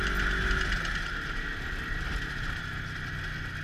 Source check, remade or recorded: recorded